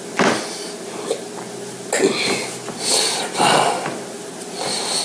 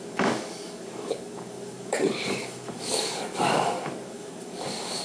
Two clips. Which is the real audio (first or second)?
first